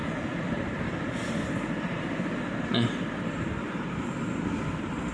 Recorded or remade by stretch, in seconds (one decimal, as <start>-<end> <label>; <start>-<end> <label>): 0.0-5.1 recorded